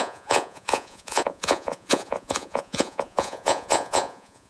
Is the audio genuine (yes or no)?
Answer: no